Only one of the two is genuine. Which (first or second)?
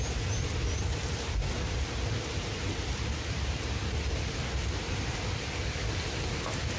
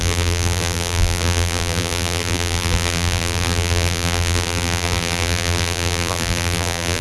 first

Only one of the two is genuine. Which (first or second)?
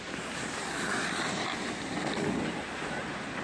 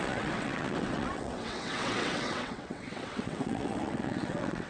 first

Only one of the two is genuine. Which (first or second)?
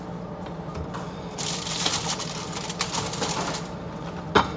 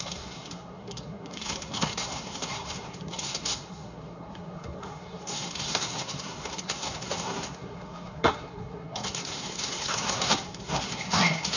first